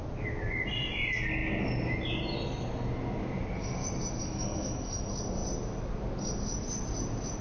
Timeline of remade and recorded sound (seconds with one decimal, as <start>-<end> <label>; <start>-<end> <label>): 0.0-7.4 recorded